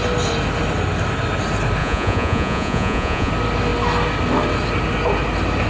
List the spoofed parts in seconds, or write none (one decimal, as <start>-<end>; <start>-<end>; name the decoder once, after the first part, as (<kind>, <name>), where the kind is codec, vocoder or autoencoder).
1.8-3.3 (vocoder, Vocos)